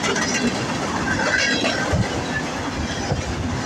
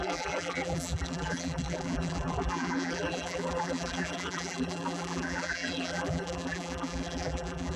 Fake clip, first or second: second